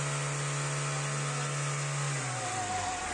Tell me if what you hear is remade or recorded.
recorded